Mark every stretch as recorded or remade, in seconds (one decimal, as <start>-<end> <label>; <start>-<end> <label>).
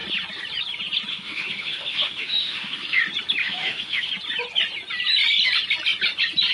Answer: 0.0-1.1 recorded; 1.1-3.0 remade; 3.0-3.4 recorded; 3.4-4.1 remade; 4.1-6.5 recorded